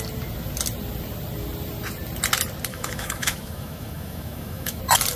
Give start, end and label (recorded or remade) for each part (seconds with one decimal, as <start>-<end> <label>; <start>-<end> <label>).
0.0-2.7 recorded; 2.7-4.8 remade; 4.8-5.2 recorded